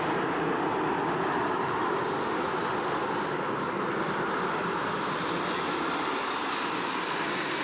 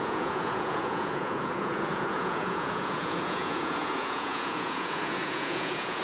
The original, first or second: first